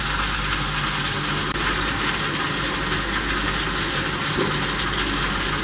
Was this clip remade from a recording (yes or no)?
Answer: no